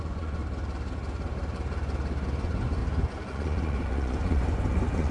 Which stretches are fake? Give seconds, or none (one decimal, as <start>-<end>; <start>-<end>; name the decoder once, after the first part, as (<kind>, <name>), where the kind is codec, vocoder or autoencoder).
0.0-0.4 (vocoder, Vocos); 2.4-2.8; 3.3-5.1